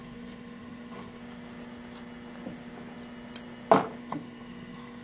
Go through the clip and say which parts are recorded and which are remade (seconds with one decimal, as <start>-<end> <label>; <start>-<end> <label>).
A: 0.0-1.2 remade; 1.2-4.0 recorded; 4.0-5.0 remade